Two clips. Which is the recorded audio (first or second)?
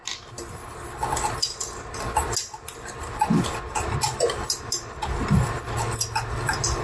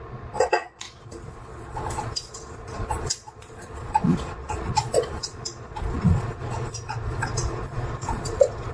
first